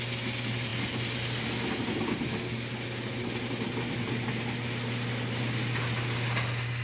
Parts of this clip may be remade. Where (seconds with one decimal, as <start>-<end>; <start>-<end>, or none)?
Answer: none